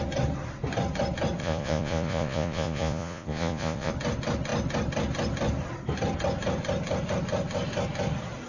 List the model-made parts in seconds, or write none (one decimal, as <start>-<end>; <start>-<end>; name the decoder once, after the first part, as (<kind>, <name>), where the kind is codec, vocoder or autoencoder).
1.4-3.9 (vocoder, Vocos)